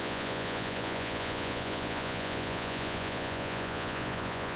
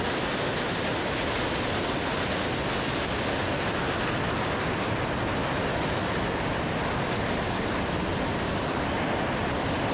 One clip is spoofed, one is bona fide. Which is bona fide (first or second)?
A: second